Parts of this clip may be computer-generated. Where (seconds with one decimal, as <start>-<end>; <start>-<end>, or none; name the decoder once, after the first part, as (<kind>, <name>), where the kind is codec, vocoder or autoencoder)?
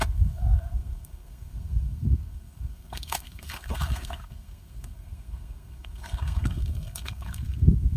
0.0-8.0 (codec, SNAC)